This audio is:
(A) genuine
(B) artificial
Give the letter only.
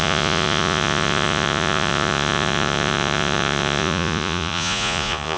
B